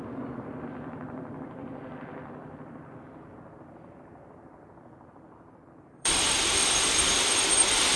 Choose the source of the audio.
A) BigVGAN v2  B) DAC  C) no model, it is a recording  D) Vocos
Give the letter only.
A